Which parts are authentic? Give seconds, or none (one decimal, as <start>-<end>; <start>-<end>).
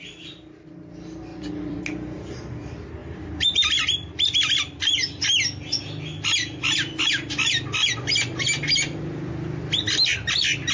0.0-1.3; 1.8-3.0; 5.2-10.7